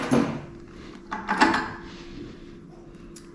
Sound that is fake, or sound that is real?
real